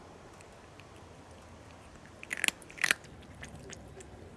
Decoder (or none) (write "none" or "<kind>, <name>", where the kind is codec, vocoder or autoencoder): none